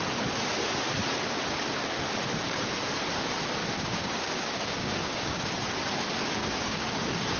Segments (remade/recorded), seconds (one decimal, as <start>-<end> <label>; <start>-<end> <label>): 0.0-3.6 recorded; 3.6-5.4 remade; 5.4-6.4 recorded; 6.4-6.9 remade; 6.9-7.4 recorded